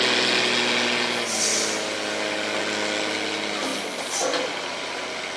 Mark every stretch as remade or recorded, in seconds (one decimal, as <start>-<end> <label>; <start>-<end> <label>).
0.0-5.4 recorded